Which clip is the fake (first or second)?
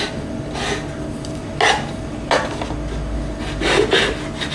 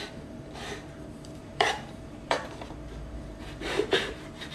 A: second